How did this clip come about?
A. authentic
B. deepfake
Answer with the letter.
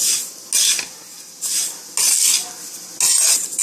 A